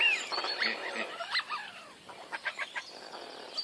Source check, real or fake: fake